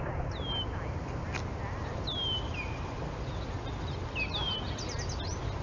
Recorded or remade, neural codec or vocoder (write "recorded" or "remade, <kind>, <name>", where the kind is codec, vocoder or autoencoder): recorded